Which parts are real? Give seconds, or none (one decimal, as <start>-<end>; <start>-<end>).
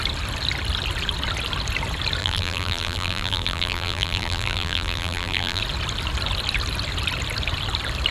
0.0-2.2; 5.6-8.1